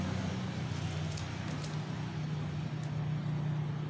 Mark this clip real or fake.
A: real